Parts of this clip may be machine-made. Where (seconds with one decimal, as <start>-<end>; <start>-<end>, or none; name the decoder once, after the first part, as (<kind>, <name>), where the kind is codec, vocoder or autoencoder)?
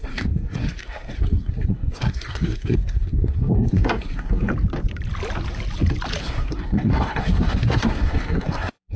0.0-4.5 (codec, SNAC); 6.2-9.0